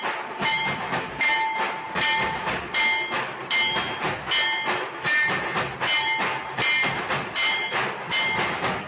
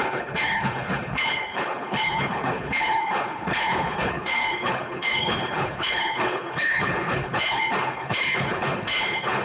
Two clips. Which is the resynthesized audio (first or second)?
second